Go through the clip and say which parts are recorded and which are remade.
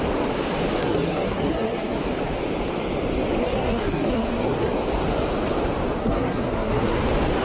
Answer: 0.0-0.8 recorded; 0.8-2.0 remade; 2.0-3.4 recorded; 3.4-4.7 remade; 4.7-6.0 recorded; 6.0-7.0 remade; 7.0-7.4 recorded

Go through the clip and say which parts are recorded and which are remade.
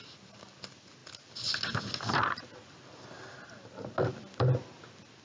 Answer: 0.0-5.2 recorded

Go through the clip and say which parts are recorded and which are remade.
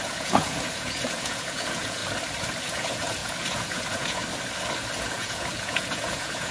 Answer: 0.0-2.0 remade; 2.0-2.6 recorded; 2.6-4.2 remade; 4.2-4.9 recorded; 4.9-6.5 remade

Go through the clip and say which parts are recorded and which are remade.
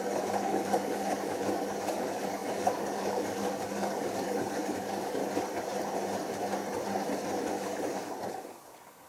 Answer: 0.0-5.2 remade; 5.2-7.4 recorded; 7.4-9.1 remade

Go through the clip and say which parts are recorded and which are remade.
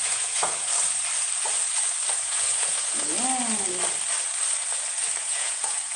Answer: 0.0-0.7 remade; 0.7-2.2 recorded; 2.2-3.1 remade; 3.1-5.2 recorded; 5.2-6.0 remade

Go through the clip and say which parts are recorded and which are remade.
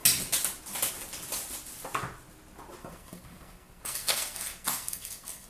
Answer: 0.0-2.8 recorded; 2.8-5.5 remade